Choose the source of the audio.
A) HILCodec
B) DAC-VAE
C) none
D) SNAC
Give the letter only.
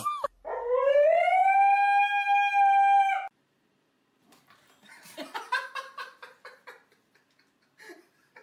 C